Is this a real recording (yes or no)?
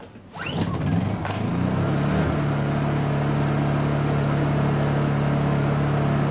yes